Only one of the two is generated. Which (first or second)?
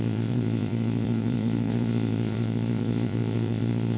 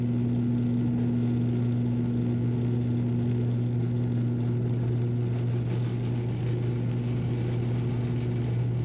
first